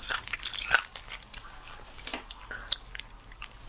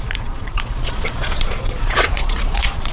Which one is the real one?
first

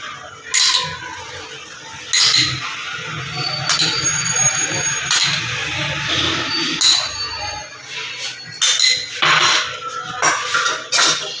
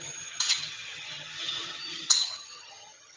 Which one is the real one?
first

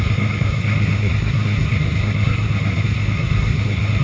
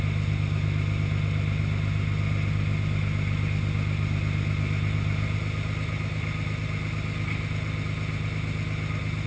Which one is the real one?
second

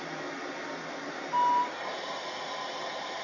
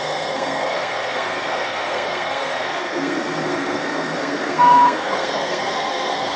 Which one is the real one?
first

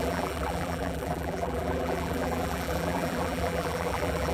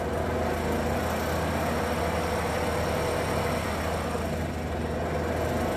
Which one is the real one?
second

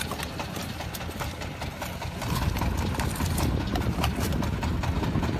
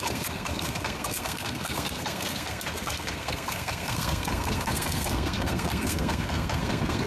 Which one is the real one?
first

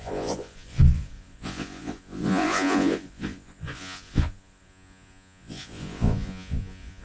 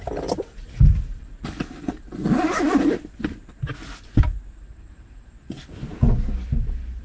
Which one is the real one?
second